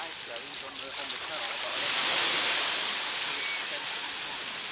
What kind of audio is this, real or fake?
real